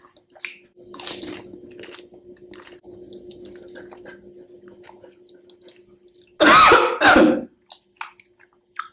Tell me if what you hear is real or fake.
real